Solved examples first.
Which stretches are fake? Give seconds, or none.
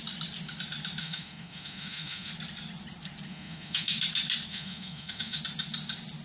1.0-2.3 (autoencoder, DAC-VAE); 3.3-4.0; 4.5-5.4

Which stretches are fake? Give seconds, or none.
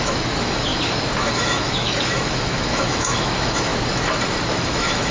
0.0-0.7 (autoencoder, DAC-VAE); 1.3-3.7; 4.5-5.1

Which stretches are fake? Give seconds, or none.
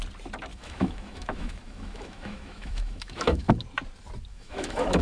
0.5-3.5 (autoencoder, DAC-VAE); 4.3-5.0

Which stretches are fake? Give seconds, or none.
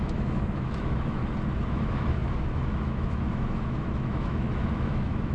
0.0-1.2 (autoencoder, DAC-VAE); 1.7-5.3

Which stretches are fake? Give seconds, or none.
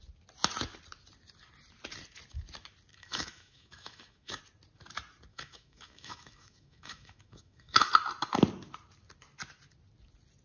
2.9-4.4 (autoencoder, DAC-VAE); 5.3-7.9